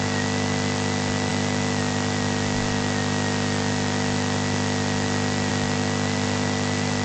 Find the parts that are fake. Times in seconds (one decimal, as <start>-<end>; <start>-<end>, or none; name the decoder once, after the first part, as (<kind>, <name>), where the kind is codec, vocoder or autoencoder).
none

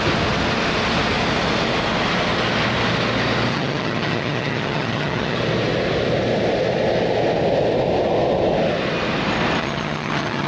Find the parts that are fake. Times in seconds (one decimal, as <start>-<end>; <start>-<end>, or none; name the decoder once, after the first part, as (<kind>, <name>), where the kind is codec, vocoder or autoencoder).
3.5-5.4 (vocoder, HiFi-GAN); 9.6-10.5